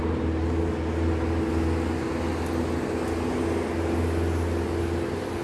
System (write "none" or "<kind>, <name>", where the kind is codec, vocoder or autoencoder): none